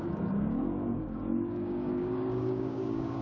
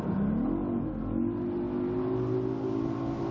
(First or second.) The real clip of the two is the second